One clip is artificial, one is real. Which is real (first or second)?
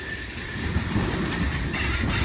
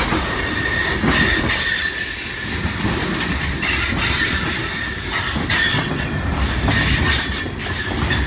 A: second